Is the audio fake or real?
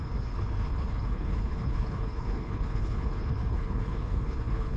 fake